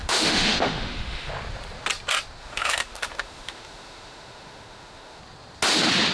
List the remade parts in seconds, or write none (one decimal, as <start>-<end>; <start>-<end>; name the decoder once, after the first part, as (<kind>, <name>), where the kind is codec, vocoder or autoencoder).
0.0-1.3 (autoencoder, DAC-VAE); 2.4-5.2